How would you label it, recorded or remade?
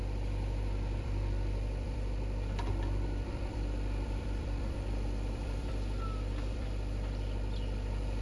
remade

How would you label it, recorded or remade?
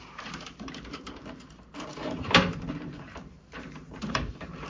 remade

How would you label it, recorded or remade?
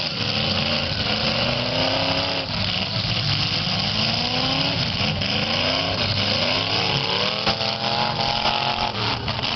recorded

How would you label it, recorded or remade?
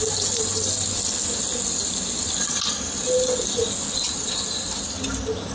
recorded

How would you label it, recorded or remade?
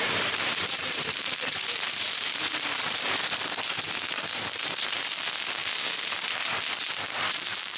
remade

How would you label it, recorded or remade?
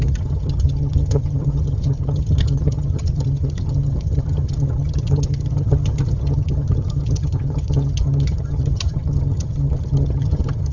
remade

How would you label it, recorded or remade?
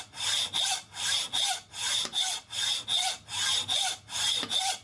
recorded